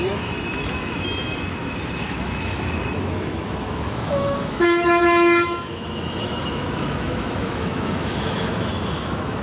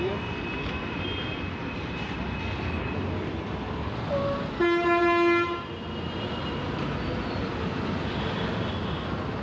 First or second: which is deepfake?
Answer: first